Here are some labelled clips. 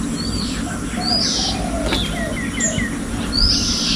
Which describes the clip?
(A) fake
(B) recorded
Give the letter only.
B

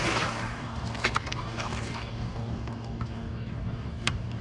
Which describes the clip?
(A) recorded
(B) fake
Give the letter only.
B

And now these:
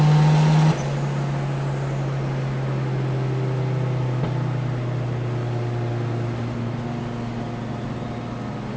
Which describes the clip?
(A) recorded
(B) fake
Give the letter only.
A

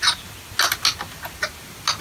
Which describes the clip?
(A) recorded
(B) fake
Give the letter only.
A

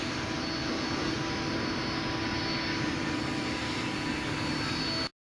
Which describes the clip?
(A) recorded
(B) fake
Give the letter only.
A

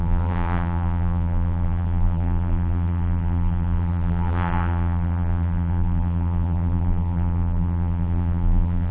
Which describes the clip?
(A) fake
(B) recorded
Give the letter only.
A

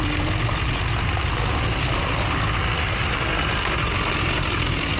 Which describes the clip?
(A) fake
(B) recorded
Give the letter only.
B